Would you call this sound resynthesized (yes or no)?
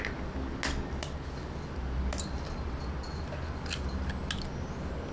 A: no